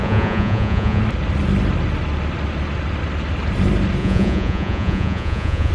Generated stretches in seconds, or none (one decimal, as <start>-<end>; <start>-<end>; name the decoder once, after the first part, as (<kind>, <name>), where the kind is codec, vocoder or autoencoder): 0.0-1.0 (vocoder, Vocos); 4.0-5.7